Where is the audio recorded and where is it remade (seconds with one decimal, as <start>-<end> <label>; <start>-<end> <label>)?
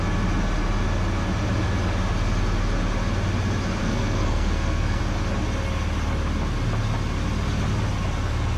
0.0-3.8 recorded; 3.8-5.0 remade; 5.0-8.6 recorded